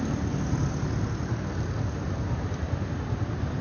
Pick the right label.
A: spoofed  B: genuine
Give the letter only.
B